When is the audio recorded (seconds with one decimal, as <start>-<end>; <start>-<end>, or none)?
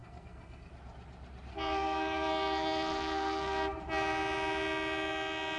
0.7-1.5; 3.8-5.6